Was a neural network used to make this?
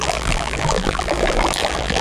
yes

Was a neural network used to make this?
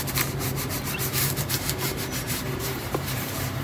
yes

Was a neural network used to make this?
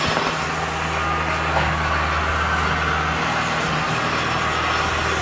no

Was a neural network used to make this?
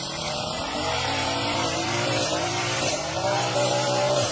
yes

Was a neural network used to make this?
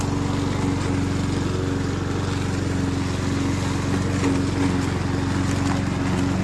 no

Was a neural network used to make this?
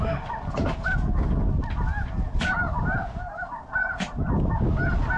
no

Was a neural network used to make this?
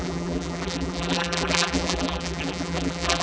yes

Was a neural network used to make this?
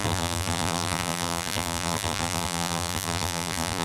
yes